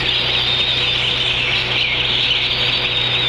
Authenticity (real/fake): real